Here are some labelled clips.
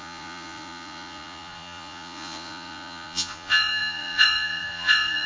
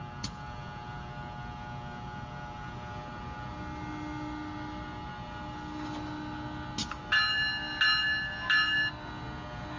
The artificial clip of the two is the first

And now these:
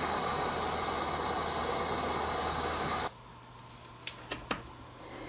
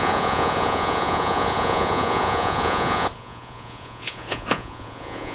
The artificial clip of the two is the second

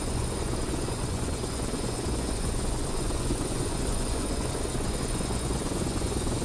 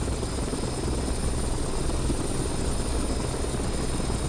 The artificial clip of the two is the first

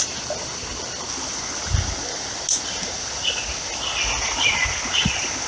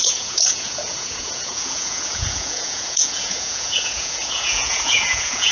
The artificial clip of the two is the second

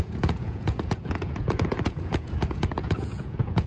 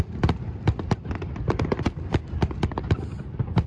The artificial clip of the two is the first